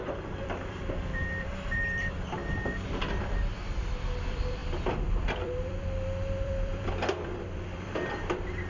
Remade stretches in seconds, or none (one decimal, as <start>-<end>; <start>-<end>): 0.0-8.7